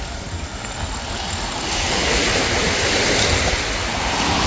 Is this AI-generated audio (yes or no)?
no